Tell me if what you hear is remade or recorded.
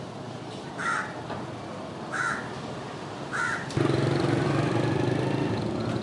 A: remade